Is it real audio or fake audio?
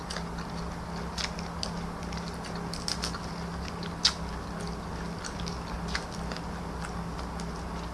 real